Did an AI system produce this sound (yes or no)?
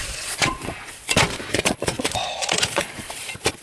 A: yes